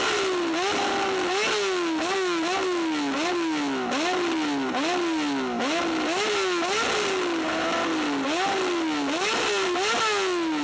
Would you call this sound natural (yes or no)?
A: yes